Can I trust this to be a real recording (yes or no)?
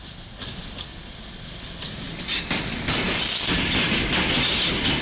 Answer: yes